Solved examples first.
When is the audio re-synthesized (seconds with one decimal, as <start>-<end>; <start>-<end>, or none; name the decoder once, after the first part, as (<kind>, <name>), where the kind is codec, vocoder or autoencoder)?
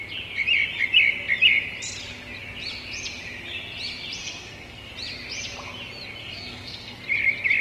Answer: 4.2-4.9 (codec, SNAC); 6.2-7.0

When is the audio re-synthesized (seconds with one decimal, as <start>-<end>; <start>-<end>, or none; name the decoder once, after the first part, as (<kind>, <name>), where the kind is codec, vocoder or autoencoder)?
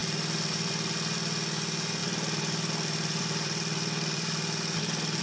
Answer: 0.0-0.7 (vocoder, BigVGAN v2); 2.0-5.2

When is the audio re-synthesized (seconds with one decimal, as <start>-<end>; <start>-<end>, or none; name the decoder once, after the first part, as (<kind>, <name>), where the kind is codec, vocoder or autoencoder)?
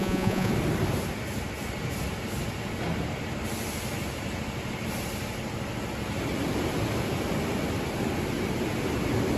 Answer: 0.0-0.5 (vocoder, Vocos)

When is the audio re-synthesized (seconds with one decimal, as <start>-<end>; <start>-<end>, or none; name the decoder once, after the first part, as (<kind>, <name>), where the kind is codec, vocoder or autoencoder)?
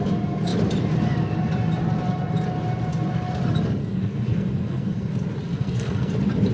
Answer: 3.8-5.1 (codec, SNAC); 5.5-6.1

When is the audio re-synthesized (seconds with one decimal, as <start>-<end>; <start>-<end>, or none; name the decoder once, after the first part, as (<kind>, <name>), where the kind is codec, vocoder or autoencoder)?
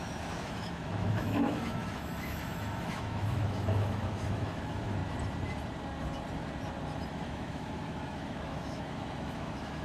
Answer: 0.0-5.0 (autoencoder, DAC-VAE); 7.1-9.8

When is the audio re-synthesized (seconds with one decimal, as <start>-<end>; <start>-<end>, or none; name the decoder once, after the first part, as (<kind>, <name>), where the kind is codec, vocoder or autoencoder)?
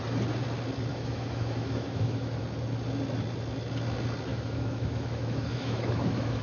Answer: 0.9-2.4 (autoencoder, DAC-VAE); 4.3-6.4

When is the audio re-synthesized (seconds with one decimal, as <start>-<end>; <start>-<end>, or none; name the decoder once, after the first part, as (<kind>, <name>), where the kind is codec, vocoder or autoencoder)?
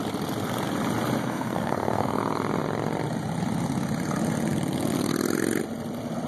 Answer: 1.2-2.2 (codec, SNAC)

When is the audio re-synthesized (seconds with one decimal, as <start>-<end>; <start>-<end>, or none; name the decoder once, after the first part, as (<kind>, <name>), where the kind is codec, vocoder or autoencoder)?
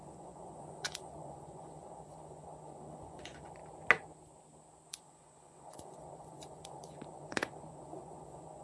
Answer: 0.0-3.6 (vocoder, Vocos); 4.9-8.6